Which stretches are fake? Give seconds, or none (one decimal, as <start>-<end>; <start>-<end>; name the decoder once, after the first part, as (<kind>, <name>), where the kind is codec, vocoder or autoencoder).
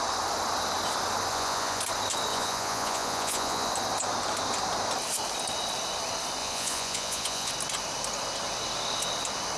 1.3-1.8 (vocoder, Vocos); 2.3-3.7; 6.4-7.5